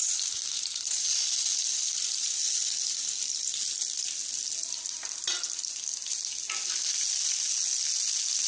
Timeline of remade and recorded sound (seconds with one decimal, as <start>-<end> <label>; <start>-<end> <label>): 0.0-8.5 recorded